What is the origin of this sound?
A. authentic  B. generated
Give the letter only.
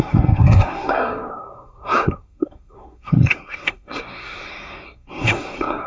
B